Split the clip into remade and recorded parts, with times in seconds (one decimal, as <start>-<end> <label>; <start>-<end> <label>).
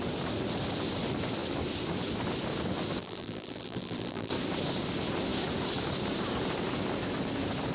0.0-3.0 recorded; 3.0-4.3 remade; 4.3-7.7 recorded